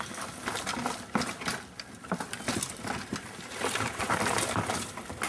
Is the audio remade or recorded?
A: remade